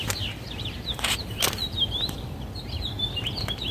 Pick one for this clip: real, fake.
fake